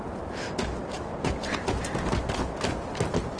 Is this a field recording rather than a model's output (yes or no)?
yes